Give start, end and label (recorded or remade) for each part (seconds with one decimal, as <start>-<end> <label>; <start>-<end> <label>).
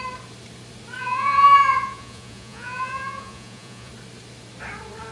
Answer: 0.0-1.0 recorded; 1.0-3.9 remade; 3.9-5.1 recorded